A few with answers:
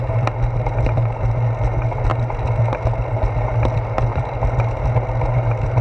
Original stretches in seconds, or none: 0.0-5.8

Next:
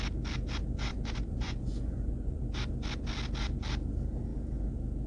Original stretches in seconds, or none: 0.0-0.9; 2.4-5.1

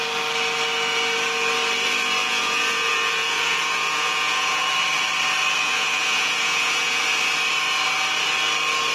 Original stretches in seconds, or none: 0.0-2.2; 4.6-5.6; 7.0-8.9

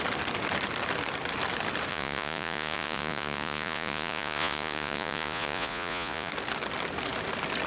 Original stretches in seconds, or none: 0.0-1.9; 6.3-7.7

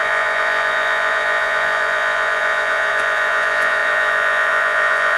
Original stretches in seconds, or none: none

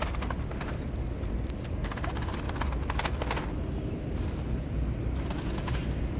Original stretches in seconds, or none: 0.0-6.2